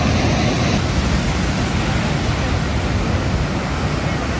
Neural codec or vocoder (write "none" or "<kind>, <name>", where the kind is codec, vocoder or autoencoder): none